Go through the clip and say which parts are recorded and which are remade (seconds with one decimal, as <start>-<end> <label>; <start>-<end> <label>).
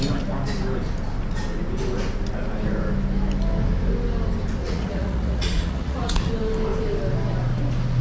0.0-4.6 recorded; 4.6-6.3 remade; 6.3-8.0 recorded